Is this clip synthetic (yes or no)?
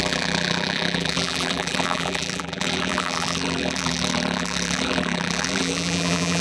yes